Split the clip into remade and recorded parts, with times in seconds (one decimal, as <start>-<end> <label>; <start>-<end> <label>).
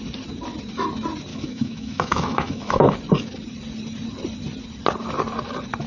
0.0-1.3 recorded; 1.3-3.0 remade; 3.0-5.9 recorded